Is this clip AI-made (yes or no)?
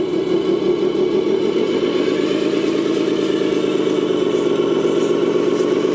no